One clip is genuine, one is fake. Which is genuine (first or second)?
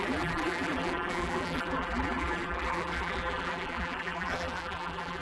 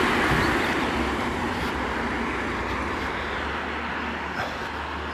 second